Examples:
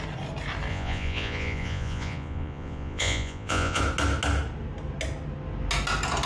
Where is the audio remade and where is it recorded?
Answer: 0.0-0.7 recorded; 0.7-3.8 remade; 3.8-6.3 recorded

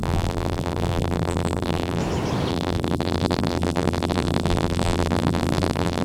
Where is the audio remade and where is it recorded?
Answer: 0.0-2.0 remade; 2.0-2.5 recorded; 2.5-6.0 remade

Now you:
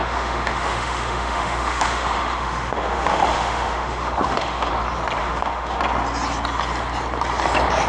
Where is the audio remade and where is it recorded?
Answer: 0.0-4.7 remade; 4.7-5.2 recorded; 5.2-5.8 remade; 5.8-7.9 recorded

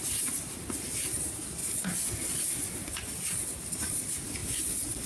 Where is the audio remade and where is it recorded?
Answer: 0.0-1.6 recorded; 1.6-4.0 remade; 4.0-4.4 recorded; 4.4-5.1 remade

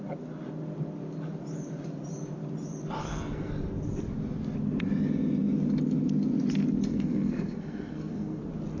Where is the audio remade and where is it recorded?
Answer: 0.0-3.0 recorded; 3.0-3.5 remade; 3.5-6.9 recorded; 6.9-8.4 remade; 8.4-8.8 recorded

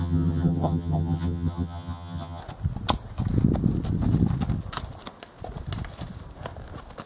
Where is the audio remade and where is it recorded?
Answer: 0.0-2.4 remade; 2.4-7.1 recorded